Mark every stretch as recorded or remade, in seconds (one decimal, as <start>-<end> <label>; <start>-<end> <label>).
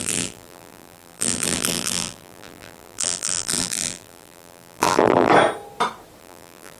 0.0-5.3 remade; 5.3-6.2 recorded; 6.2-6.8 remade